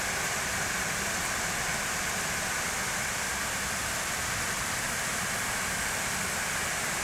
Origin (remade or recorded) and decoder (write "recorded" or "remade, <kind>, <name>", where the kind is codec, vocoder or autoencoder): remade, vocoder, BigVGAN v2